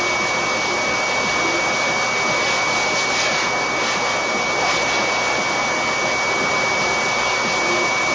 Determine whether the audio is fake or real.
real